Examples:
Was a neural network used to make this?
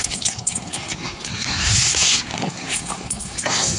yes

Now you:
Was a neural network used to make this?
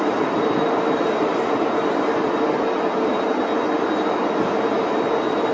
no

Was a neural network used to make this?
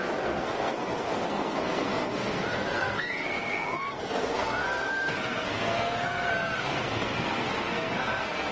yes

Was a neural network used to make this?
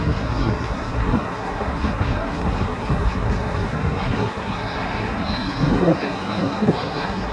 yes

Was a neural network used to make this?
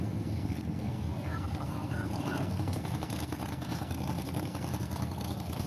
yes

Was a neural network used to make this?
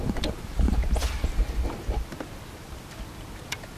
no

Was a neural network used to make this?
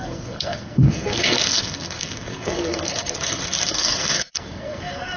yes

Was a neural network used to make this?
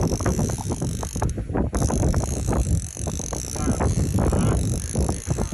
no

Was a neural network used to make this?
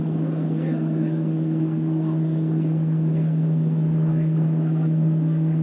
yes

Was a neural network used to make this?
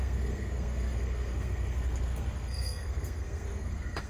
yes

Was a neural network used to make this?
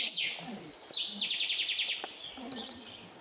no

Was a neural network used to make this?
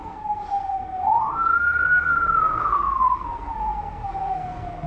yes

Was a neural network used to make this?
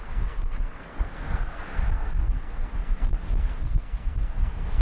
yes